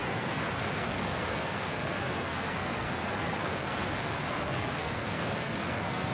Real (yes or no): no